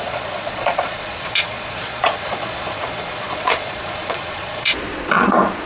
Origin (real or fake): fake